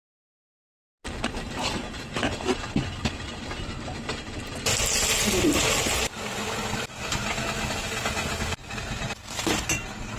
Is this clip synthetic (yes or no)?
no